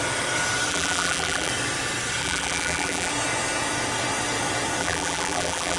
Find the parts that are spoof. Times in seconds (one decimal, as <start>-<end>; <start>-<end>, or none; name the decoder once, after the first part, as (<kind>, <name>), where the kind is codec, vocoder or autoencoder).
0.7-1.5 (vocoder, BigVGAN v2); 2.2-3.1; 4.8-5.8